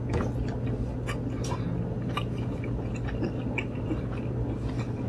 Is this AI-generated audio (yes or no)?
no